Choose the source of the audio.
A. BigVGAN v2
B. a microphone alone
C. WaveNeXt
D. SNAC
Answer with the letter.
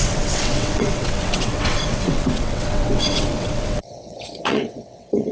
C